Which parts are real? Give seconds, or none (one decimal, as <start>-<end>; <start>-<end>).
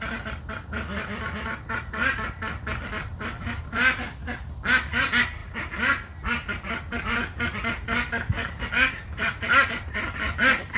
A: 0.0-10.8